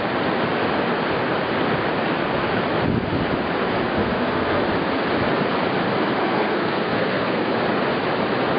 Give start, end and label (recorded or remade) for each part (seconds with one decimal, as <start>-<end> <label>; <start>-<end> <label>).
0.0-4.0 recorded; 4.0-4.6 remade; 4.6-6.2 recorded; 6.2-7.5 remade; 7.5-8.6 recorded